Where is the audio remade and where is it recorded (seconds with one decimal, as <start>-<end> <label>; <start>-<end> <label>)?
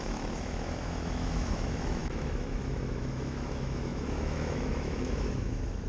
0.0-5.9 remade